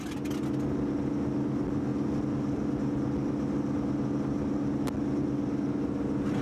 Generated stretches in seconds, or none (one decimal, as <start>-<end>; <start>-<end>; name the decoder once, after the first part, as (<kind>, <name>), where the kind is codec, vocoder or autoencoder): none